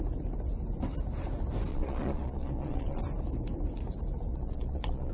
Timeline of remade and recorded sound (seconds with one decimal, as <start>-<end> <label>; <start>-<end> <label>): 0.0-1.7 recorded; 1.7-3.0 remade; 3.0-4.3 recorded; 4.3-5.1 remade